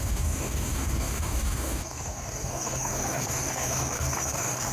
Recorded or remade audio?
remade